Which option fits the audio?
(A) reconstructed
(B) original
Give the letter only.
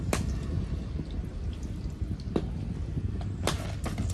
B